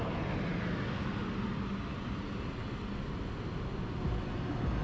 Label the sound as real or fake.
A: real